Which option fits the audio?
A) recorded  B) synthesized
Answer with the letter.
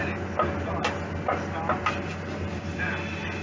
A